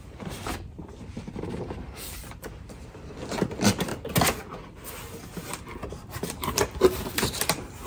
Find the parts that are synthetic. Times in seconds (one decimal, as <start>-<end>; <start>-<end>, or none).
0.0-3.9; 5.9-7.9